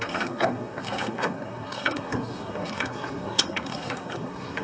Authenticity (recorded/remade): remade